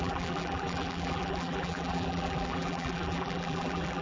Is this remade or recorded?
remade